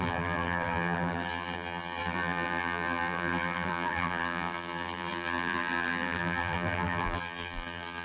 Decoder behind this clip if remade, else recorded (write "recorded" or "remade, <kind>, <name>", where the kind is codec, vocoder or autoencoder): remade, vocoder, BigVGAN v2